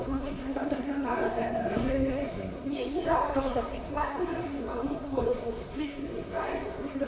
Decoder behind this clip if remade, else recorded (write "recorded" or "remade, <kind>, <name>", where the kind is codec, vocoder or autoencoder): remade, codec, SNAC